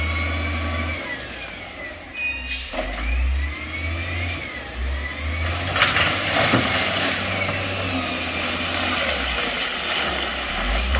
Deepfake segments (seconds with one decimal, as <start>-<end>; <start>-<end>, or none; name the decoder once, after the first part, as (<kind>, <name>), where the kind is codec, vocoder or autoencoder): none